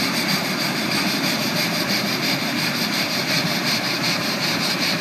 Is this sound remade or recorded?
remade